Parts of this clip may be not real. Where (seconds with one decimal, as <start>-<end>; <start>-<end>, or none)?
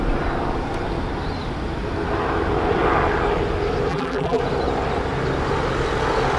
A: 3.9-4.4